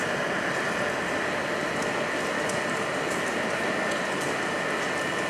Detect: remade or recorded recorded